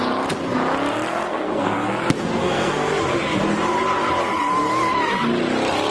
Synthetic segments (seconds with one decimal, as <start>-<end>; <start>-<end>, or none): 1.1-1.9; 2.4-2.9